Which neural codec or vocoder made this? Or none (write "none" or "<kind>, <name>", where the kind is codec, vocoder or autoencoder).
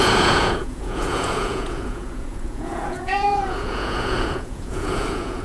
vocoder, Vocos